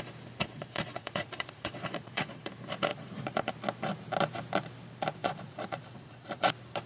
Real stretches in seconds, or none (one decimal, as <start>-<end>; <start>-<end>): 0.0-0.4; 2.5-2.9; 3.5-5.2; 6.5-6.9